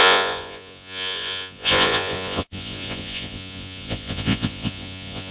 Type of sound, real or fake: fake